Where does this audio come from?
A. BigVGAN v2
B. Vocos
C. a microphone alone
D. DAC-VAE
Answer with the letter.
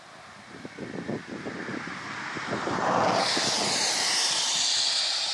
C